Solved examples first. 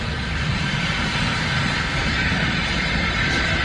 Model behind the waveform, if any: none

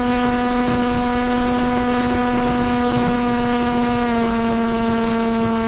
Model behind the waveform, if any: codec, HILCodec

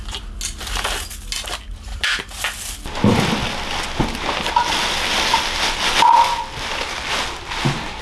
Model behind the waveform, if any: none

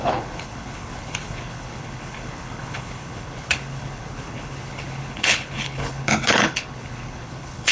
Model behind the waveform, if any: codec, HILCodec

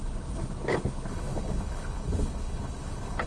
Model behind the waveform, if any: codec, HILCodec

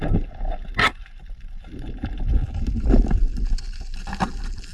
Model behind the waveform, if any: none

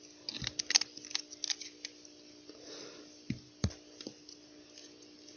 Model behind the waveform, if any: none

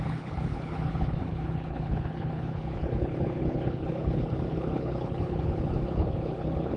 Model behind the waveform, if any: codec, HILCodec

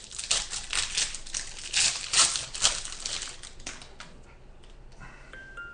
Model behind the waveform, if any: none